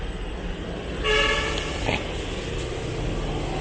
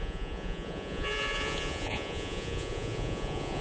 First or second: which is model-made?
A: second